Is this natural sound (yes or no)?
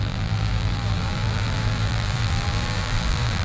no